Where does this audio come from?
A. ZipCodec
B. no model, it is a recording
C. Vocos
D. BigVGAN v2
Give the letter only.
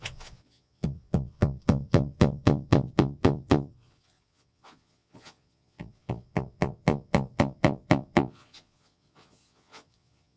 C